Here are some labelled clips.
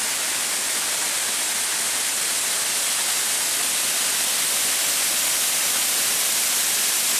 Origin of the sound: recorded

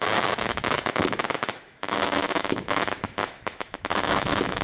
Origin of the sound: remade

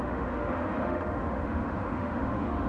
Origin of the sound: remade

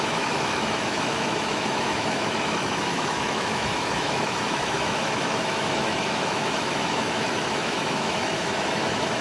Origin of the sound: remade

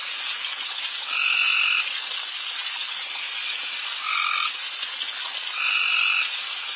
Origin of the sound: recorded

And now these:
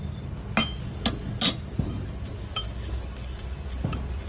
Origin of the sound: recorded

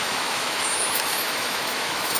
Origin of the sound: remade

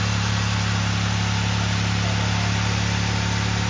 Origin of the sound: recorded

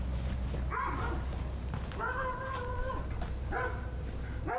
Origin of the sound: recorded